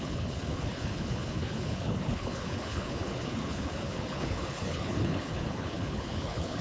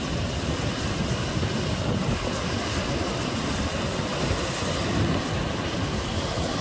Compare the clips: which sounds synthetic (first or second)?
first